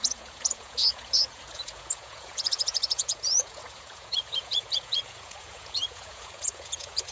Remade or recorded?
remade